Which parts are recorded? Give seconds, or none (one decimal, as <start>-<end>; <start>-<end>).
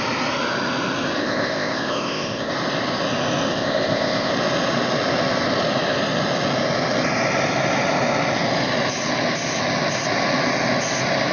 0.0-1.2; 2.5-3.5; 4.3-11.3